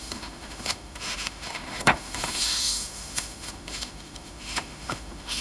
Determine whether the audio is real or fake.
fake